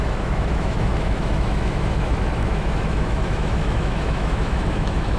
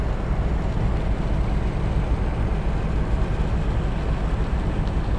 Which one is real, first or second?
second